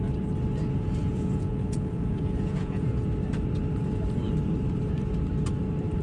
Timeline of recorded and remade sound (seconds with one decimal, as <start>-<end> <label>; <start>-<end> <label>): 0.0-1.1 recorded; 1.1-3.1 remade; 3.1-6.0 recorded